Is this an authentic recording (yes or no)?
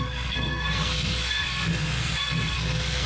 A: no